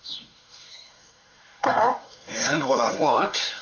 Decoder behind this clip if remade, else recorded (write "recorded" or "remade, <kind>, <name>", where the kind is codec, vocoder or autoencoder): remade, codec, SNAC